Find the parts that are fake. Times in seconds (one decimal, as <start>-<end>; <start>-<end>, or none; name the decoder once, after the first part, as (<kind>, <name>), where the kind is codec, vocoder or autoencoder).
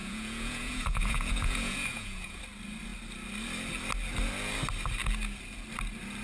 0.0-2.4 (vocoder, Vocos)